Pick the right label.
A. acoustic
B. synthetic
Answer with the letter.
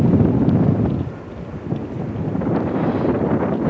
A